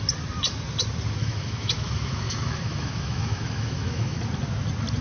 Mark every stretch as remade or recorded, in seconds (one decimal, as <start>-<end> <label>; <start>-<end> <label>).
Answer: 0.0-1.2 recorded; 1.2-4.2 remade; 4.2-5.0 recorded